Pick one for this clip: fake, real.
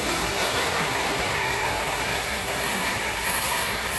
fake